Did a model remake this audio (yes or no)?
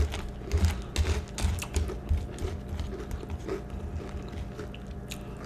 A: no